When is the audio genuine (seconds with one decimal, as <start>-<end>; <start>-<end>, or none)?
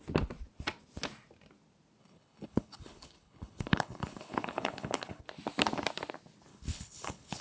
0.0-2.0; 5.2-6.5